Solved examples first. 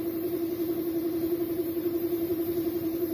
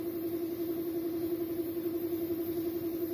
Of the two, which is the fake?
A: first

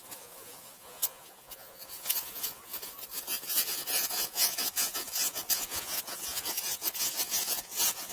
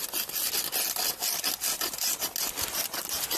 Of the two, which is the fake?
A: first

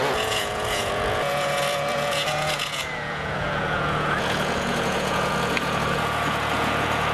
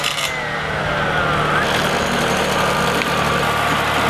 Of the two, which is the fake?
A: first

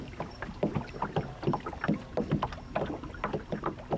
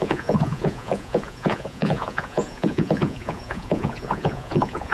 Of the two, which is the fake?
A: second